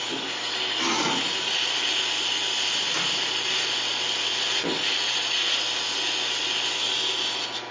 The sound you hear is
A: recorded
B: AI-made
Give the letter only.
A